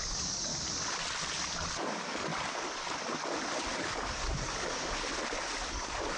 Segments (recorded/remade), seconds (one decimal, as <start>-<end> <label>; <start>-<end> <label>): 0.0-0.5 remade; 0.5-1.8 recorded; 1.8-2.3 remade; 2.3-3.9 recorded; 3.9-5.1 remade; 5.1-5.7 recorded; 5.7-6.2 remade